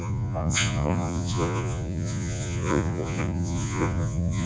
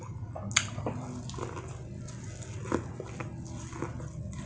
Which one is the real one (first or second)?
second